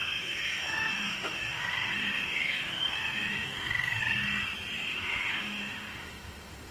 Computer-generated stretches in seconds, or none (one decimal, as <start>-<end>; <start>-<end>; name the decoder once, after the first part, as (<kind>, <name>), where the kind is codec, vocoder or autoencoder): 0.0-4.0 (autoencoder, DAC-VAE); 4.9-6.7